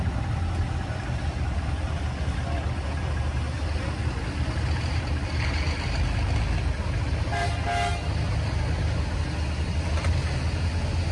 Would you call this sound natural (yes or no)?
yes